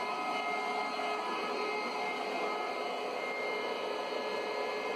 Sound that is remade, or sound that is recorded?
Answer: recorded